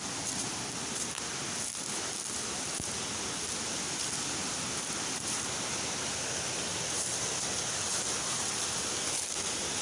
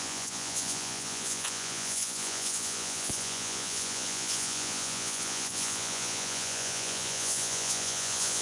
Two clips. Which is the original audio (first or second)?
first